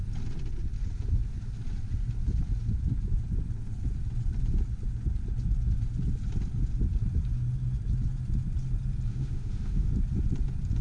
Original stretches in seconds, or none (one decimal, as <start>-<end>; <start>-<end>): 0.0-9.1; 9.9-10.8